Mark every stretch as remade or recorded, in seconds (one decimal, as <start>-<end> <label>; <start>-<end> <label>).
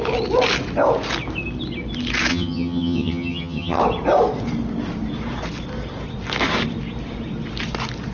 0.0-2.3 recorded; 2.3-3.8 remade; 3.8-8.1 recorded